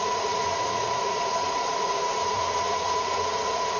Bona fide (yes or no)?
no